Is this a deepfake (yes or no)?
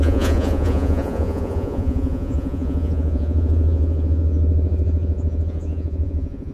yes